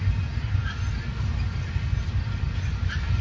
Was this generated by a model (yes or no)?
no